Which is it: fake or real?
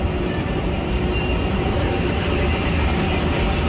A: real